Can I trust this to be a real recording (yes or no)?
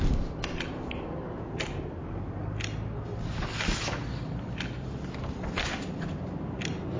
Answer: yes